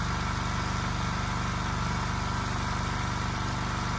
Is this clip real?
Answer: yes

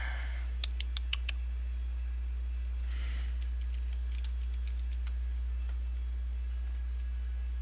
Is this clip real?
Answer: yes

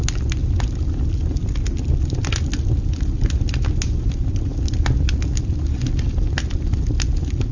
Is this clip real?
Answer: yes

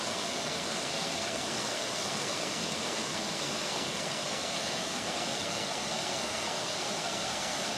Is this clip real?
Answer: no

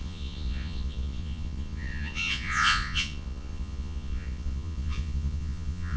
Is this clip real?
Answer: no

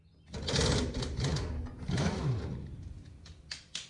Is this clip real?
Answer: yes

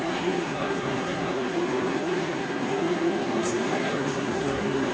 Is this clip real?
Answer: no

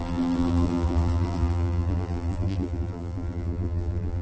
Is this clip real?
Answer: no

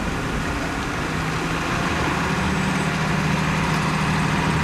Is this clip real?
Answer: yes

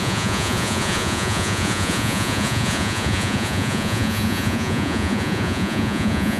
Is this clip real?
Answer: no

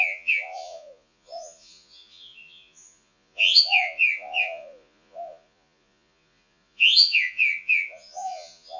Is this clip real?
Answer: no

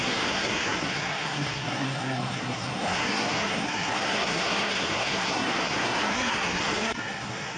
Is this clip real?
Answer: no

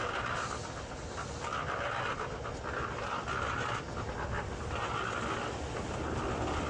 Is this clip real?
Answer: yes